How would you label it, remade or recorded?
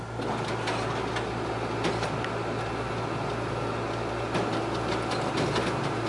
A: recorded